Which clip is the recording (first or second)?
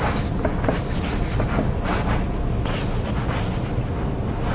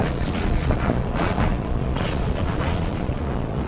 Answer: first